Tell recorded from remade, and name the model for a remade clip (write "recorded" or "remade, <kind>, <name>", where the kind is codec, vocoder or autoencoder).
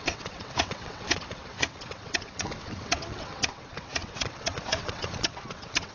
remade, vocoder, WaveNeXt